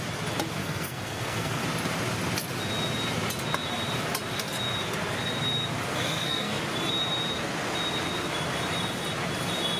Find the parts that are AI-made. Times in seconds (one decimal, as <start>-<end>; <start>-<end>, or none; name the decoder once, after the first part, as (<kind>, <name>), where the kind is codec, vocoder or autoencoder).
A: 0.6-1.6 (codec, SNAC); 5.9-6.6